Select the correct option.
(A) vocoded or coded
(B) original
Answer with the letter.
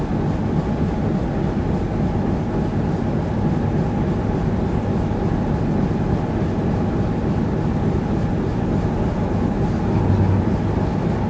B